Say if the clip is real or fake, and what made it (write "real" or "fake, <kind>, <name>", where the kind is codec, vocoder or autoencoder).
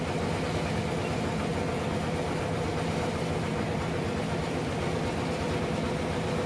real